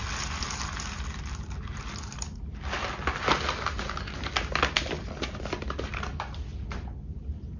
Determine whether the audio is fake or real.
real